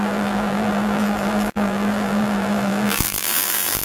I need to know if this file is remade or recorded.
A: remade